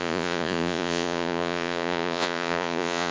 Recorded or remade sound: remade